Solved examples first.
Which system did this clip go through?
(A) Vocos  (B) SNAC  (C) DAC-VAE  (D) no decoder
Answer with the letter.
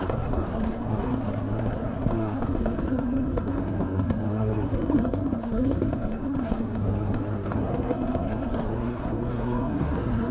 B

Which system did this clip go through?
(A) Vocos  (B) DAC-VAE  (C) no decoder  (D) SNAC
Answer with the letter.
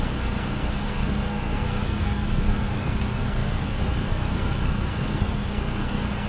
D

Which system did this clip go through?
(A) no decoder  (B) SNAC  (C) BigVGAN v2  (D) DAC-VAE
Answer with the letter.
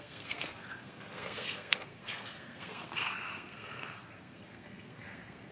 B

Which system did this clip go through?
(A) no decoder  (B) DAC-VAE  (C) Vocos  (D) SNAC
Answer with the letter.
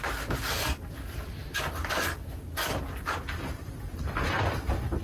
A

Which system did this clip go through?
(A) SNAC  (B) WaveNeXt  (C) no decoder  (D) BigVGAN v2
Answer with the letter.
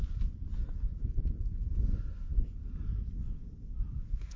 C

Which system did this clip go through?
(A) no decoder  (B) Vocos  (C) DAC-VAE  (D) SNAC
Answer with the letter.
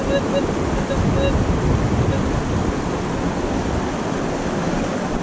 A